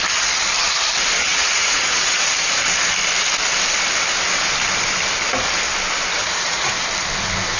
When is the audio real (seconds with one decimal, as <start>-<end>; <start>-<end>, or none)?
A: 0.0-1.3; 2.3-6.2; 6.7-7.6